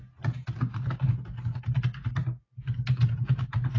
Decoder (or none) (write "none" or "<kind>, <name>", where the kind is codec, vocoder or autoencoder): none